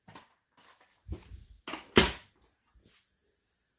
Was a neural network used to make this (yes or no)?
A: no